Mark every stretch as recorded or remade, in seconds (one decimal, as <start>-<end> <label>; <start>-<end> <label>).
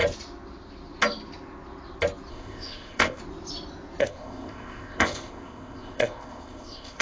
0.0-2.3 recorded; 2.3-3.2 remade; 3.2-4.0 recorded; 4.0-7.0 remade